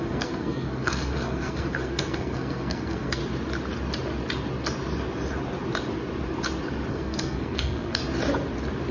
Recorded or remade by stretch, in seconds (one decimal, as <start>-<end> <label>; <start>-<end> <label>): 0.0-3.2 remade; 3.2-6.9 recorded; 6.9-8.0 remade; 8.0-8.9 recorded